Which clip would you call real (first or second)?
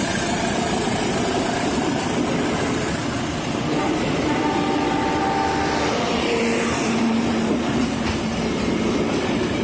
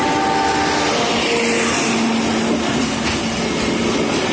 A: second